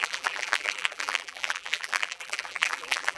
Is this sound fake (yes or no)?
yes